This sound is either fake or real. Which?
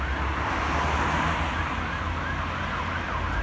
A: real